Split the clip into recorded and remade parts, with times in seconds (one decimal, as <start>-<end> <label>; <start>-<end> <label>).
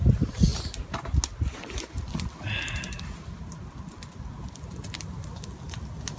0.0-6.2 recorded